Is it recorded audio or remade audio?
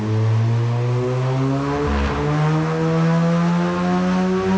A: recorded